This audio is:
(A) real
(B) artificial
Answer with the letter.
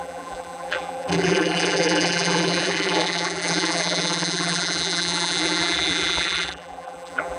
B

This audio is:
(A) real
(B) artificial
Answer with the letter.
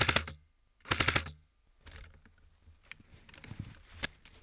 A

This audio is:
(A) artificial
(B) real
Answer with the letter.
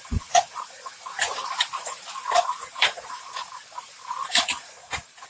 A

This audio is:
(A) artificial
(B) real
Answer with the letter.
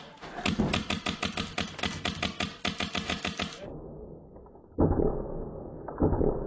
B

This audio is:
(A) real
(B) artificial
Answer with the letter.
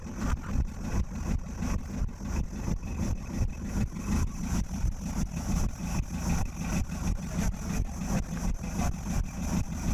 A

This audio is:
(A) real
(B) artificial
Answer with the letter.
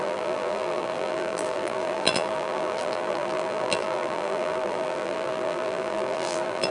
B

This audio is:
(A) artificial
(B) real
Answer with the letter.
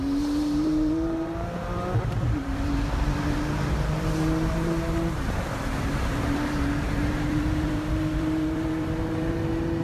A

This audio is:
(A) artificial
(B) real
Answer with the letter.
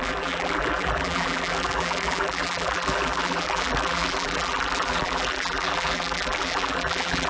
A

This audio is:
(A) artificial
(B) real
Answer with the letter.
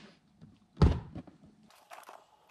B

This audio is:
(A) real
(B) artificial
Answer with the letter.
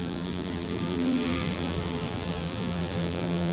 B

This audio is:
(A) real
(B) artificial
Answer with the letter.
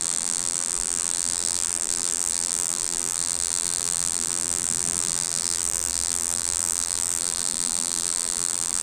B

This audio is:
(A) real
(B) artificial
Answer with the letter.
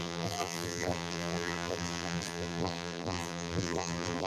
B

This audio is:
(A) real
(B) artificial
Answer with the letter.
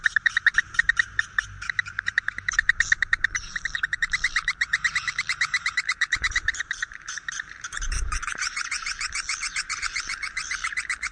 B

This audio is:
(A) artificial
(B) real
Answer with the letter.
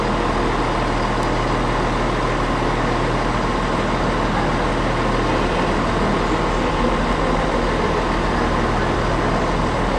B